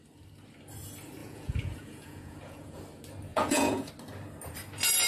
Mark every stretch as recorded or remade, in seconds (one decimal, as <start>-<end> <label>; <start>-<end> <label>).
0.0-1.2 recorded; 1.2-2.8 remade; 2.8-3.3 recorded; 3.3-3.9 remade; 3.9-5.1 recorded